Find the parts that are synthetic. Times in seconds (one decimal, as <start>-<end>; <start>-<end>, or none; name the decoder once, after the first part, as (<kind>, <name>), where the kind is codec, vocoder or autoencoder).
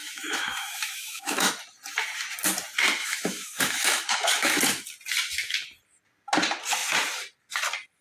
0.0-1.5 (autoencoder, DAC-VAE); 3.0-4.6